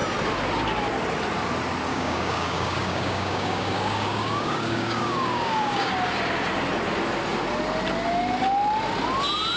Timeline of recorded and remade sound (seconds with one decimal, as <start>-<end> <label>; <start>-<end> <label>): 0.0-1.9 recorded; 1.9-5.9 remade; 5.9-9.6 recorded